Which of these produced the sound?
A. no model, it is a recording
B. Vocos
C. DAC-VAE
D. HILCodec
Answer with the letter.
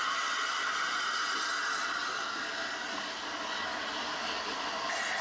A